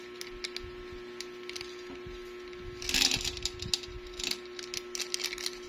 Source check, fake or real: real